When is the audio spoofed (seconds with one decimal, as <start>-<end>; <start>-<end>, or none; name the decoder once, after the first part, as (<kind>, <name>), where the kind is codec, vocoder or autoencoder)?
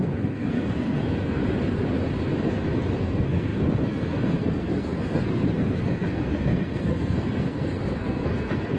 0.0-1.4 (codec, SNAC); 3.0-8.8